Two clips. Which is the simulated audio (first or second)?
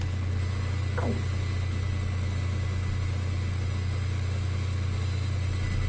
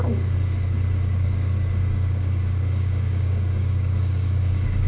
second